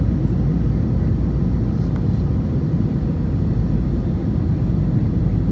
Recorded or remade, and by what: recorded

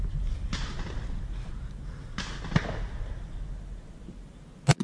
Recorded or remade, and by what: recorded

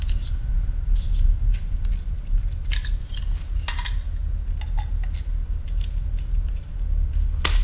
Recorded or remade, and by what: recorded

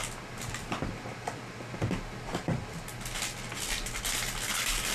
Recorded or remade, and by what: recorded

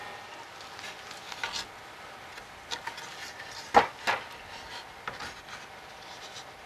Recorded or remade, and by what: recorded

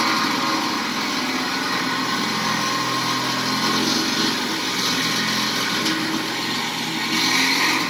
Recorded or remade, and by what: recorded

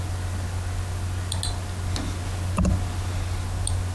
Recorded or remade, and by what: recorded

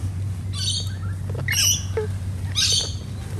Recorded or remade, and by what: recorded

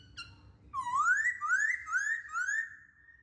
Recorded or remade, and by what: recorded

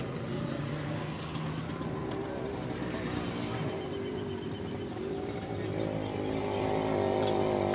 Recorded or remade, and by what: recorded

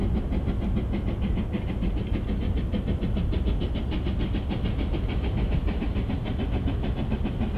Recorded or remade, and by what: recorded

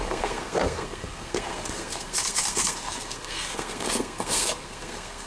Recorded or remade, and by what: remade, codec, SNAC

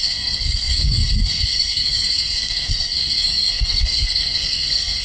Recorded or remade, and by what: remade, codec, SNAC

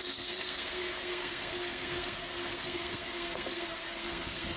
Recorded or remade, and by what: remade, codec, SNAC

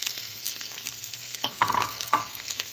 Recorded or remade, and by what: remade, codec, SNAC